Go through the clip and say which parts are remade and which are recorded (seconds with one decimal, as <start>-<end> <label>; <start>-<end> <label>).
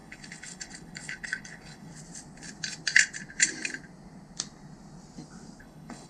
0.0-1.9 remade; 1.9-5.6 recorded; 5.6-6.1 remade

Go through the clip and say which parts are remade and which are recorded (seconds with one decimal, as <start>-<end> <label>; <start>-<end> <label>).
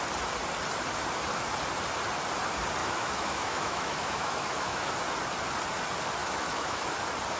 0.0-2.8 recorded; 2.8-4.9 remade; 4.9-6.2 recorded; 6.2-7.0 remade; 7.0-7.4 recorded